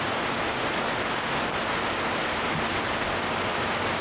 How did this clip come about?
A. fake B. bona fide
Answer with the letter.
B